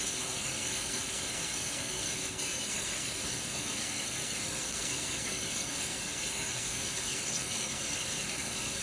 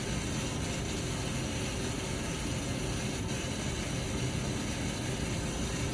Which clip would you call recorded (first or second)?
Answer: second